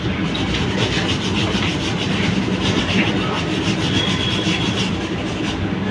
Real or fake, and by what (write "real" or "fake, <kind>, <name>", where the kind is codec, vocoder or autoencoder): real